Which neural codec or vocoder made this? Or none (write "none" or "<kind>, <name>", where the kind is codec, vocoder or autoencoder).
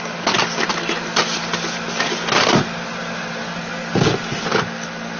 none